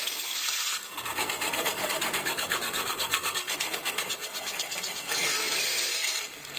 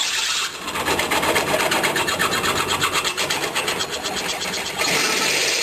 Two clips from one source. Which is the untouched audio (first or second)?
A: second